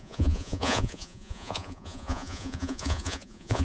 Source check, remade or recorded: remade